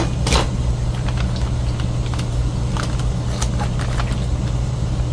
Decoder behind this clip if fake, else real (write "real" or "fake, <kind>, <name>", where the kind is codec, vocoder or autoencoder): real